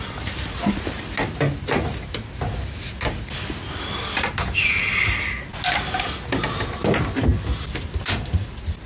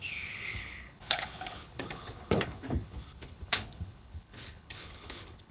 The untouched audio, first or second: first